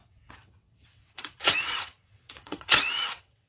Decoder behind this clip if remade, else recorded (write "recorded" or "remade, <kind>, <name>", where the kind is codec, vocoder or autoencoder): remade, vocoder, WaveNeXt